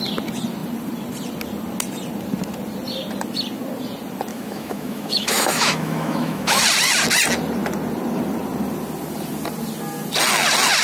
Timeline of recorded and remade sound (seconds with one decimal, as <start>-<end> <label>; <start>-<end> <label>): 0.0-4.3 recorded; 4.3-6.6 remade; 6.6-10.8 recorded